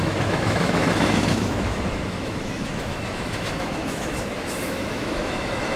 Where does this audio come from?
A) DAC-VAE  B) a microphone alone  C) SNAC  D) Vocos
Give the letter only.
A